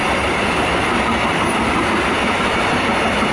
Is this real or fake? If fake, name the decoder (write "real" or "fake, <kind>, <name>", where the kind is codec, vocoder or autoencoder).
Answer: real